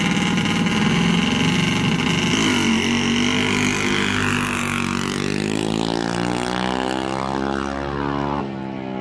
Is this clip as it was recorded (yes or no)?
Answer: yes